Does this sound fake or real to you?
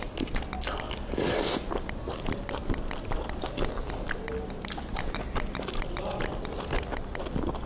real